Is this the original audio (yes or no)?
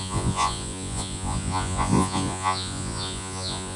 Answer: no